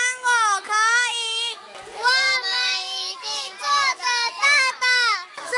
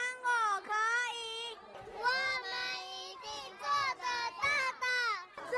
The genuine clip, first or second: second